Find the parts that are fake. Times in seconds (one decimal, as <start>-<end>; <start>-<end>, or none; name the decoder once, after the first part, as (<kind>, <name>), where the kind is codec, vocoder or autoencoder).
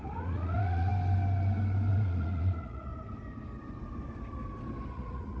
0.0-0.9 (vocoder, Vocos); 1.9-2.9; 4.9-5.4